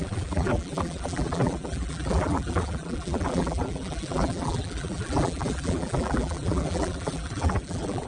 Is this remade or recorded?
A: remade